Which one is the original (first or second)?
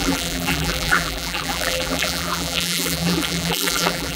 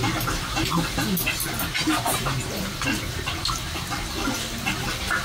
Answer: second